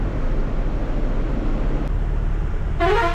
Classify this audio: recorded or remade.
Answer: recorded